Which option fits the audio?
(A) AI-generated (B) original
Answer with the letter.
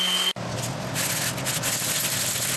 B